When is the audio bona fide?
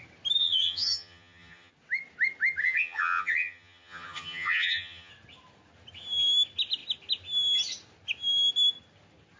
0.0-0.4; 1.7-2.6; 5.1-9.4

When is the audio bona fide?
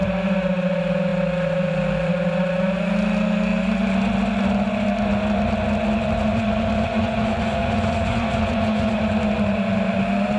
0.0-6.3; 9.0-10.4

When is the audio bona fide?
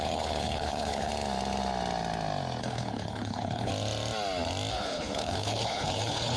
1.1-2.6; 3.7-4.7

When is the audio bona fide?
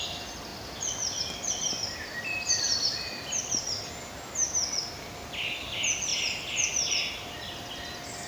0.0-8.3